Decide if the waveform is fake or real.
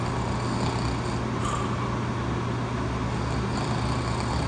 real